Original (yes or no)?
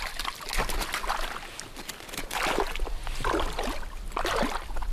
yes